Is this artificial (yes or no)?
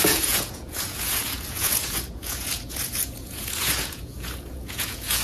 yes